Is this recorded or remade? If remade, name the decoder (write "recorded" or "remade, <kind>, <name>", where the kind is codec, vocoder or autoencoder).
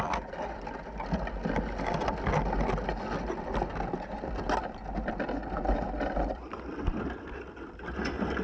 recorded